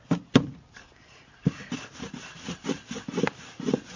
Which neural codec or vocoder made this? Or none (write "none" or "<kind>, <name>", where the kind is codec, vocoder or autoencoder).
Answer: none